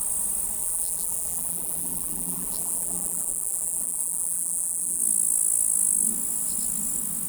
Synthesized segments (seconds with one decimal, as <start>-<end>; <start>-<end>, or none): 0.6-5.0